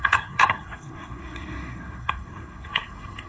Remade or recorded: remade